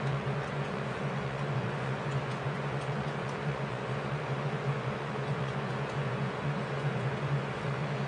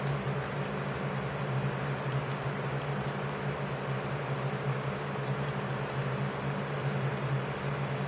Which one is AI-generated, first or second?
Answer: first